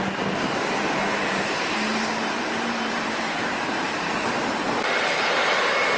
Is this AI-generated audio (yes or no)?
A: yes